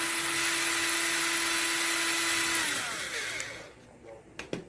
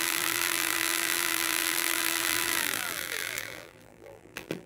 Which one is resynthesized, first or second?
second